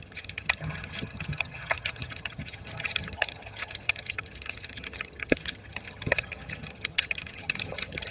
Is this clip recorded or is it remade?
remade